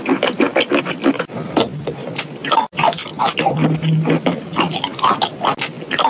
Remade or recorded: recorded